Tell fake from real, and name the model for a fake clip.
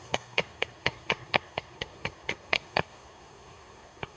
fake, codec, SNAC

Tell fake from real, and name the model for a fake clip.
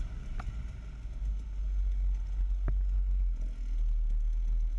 real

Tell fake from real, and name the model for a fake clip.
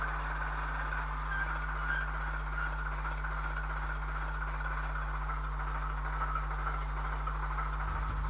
real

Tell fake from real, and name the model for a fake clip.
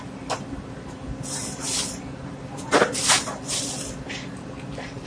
real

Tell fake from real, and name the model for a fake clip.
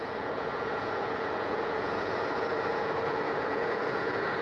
fake, vocoder, Vocos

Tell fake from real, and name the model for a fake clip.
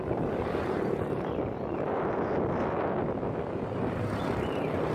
real